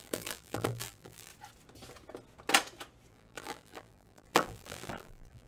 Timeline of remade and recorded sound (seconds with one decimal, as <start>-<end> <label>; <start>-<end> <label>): 0.0-1.3 remade; 1.3-3.1 recorded; 3.1-5.5 remade